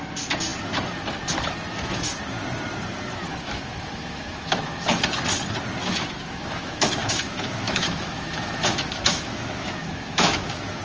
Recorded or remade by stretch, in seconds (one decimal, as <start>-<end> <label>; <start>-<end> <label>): 0.0-3.3 recorded; 3.3-5.0 remade; 5.0-5.8 recorded; 5.8-10.8 remade